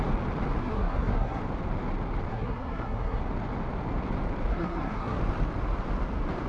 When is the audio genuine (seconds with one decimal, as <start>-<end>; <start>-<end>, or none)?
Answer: 0.0-0.6; 1.4-2.3; 3.2-4.5; 5.2-6.5